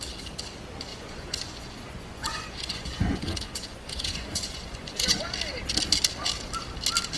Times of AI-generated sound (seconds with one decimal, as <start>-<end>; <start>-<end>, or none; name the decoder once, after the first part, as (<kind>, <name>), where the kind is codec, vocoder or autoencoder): 0.9-5.2 (vocoder, Vocos)